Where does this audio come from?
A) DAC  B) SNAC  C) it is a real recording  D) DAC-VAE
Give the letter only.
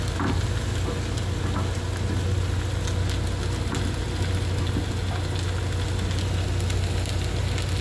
C